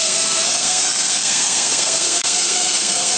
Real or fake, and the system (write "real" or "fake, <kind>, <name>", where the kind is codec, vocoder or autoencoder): fake, codec, SNAC